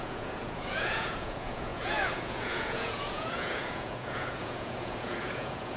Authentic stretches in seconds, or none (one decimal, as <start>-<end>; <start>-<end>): none